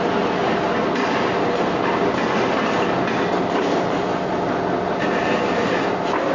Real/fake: real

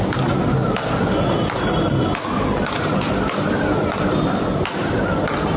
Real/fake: real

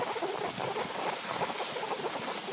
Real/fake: real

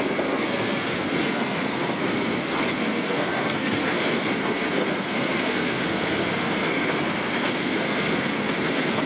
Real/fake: fake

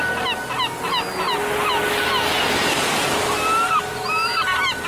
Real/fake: real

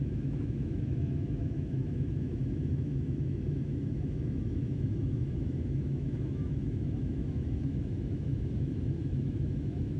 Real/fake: fake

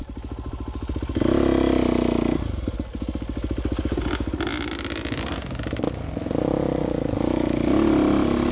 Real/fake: real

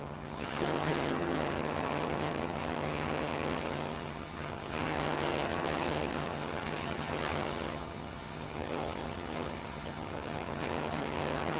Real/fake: fake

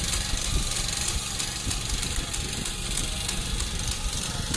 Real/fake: real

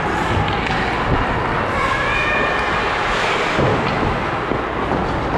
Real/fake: real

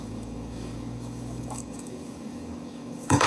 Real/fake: fake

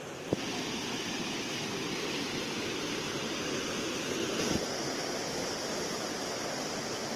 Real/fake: real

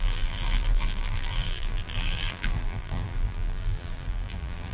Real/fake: fake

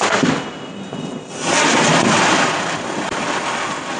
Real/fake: real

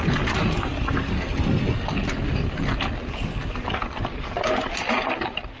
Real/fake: real